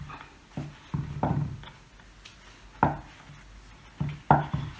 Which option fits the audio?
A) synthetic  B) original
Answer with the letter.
B